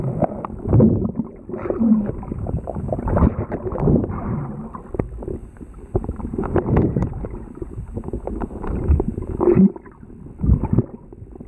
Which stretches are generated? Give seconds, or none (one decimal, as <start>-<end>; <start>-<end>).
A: 1.9-3.0; 5.4-9.8